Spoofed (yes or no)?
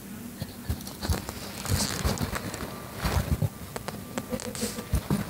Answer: no